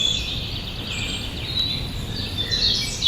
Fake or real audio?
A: real